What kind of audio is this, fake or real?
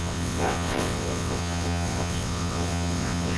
fake